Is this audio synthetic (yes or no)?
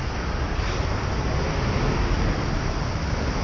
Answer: no